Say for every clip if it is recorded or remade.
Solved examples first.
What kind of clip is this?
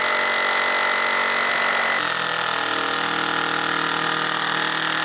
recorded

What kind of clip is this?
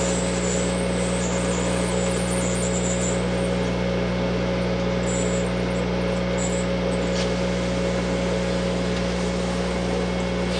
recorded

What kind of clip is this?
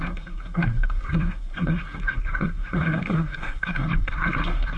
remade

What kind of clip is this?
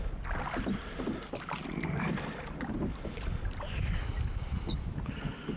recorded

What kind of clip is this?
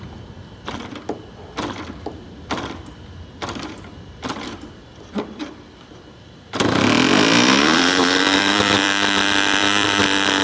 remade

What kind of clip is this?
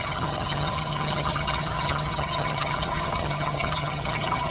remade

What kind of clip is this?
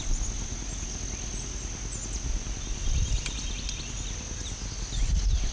recorded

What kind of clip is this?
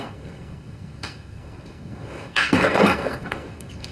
remade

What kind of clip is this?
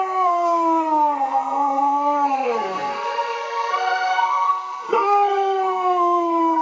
remade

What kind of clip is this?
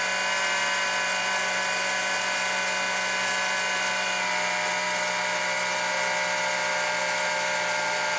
recorded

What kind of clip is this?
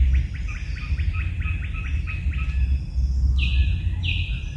recorded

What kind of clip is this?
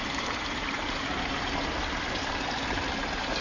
remade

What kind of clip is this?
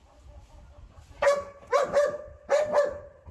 recorded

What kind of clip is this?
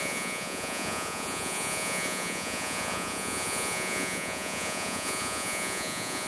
remade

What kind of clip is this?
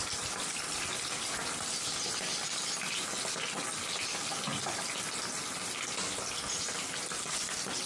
recorded